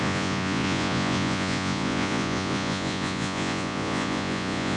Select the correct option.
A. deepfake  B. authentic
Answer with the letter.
A